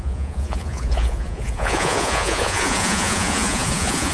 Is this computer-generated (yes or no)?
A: yes